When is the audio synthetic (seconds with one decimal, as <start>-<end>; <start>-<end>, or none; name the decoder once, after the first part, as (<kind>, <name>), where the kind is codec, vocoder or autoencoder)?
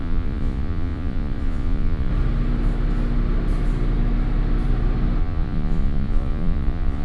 0.0-2.1 (vocoder, Vocos); 5.2-7.0